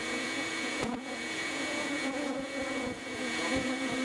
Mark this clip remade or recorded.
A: remade